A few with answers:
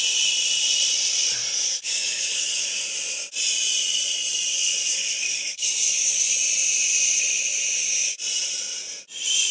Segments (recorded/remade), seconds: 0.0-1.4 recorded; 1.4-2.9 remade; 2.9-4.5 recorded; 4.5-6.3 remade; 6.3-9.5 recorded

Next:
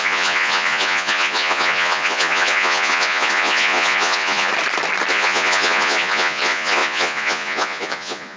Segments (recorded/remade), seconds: 0.0-4.5 remade; 4.5-5.1 recorded; 5.1-8.4 remade